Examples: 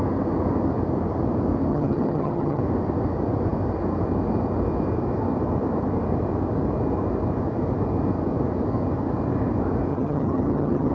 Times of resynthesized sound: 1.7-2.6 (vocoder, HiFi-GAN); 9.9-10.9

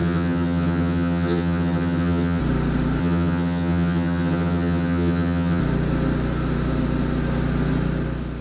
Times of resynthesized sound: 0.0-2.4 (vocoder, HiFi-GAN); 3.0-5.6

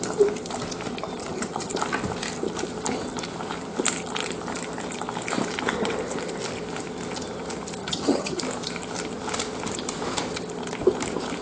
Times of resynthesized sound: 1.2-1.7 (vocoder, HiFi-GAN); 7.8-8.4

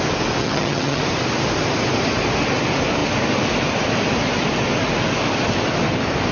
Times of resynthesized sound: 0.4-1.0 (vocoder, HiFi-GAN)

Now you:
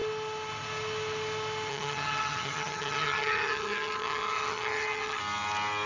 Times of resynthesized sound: 1.7-5.2 (vocoder, HiFi-GAN)

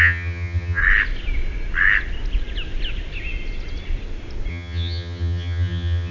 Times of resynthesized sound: 0.0-0.8 (vocoder, HiFi-GAN); 4.5-6.1